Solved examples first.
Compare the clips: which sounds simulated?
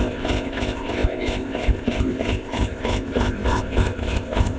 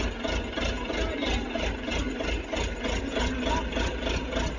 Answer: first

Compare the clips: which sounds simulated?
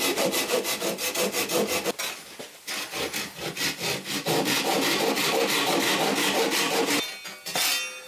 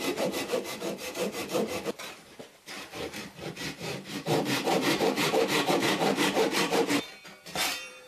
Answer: second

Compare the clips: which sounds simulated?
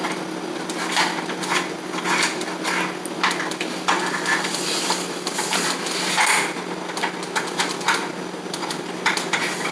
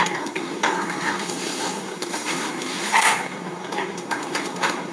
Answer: second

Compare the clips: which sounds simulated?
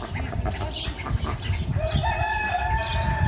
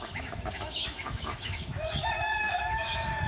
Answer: second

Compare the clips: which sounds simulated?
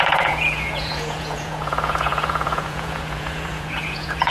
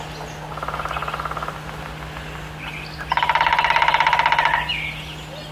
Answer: first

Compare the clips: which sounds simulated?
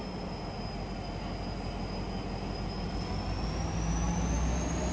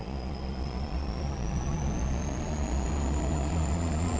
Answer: second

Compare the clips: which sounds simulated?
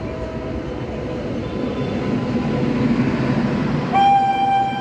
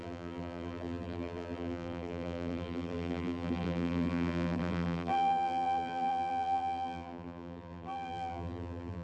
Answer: second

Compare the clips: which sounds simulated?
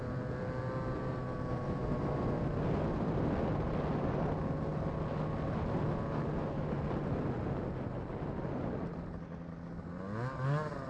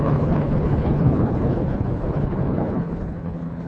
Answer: second